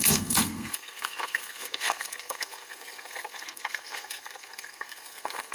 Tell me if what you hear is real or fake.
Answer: fake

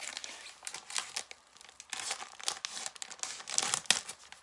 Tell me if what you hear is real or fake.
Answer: real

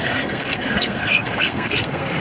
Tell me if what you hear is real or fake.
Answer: fake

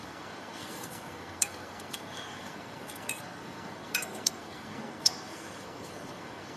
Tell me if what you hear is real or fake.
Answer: fake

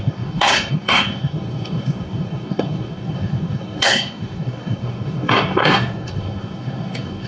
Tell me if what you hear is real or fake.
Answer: fake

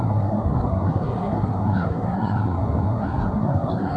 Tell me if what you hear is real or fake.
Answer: fake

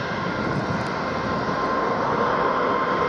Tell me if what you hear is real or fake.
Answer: real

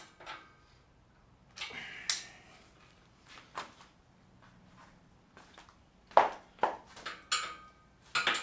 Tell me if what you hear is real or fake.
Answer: real